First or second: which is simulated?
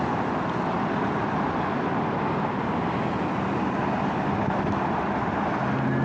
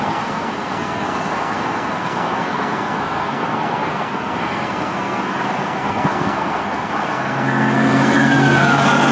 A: second